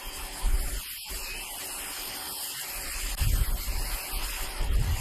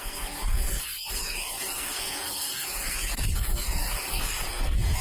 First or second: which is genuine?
first